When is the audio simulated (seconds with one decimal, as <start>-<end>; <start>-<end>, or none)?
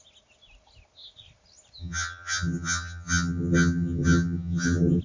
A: 1.8-5.0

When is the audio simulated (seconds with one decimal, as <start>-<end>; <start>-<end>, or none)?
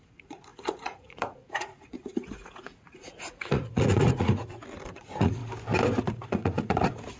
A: 0.0-4.3; 4.9-5.4; 6.0-7.2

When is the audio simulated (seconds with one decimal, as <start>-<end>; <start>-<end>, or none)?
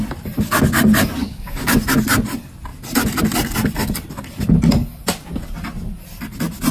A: 1.2-1.7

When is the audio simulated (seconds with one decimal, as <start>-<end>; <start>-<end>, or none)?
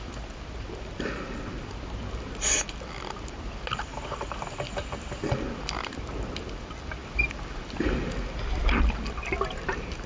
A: none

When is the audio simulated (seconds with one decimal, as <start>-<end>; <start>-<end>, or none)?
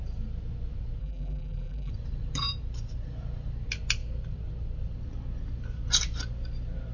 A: 1.0-1.9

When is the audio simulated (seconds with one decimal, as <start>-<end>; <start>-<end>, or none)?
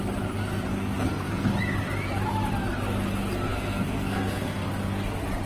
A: 0.7-1.5; 3.5-5.0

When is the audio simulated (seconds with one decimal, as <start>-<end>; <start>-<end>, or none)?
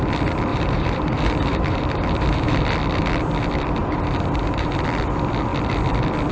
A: 0.5-2.6; 3.8-4.7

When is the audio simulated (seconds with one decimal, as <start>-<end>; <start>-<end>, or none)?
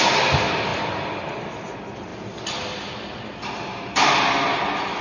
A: 0.7-1.4; 2.1-4.1